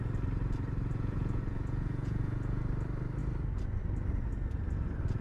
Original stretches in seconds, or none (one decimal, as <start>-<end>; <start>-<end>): 0.0-0.9; 2.6-5.2